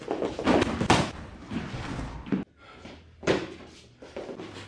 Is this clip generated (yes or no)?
no